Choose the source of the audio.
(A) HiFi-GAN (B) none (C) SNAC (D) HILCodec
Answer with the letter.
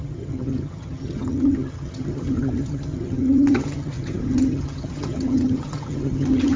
A